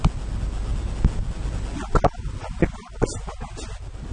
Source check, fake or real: real